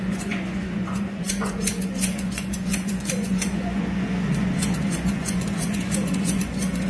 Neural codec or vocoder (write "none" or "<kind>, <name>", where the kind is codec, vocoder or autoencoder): vocoder, Vocos